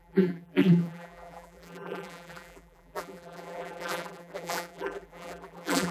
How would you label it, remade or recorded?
remade